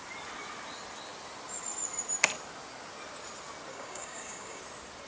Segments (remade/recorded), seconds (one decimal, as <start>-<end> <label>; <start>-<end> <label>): 0.0-3.7 recorded; 3.7-4.6 remade; 4.6-5.1 recorded